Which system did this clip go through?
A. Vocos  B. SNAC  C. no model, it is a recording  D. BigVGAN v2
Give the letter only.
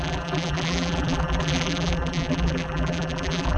D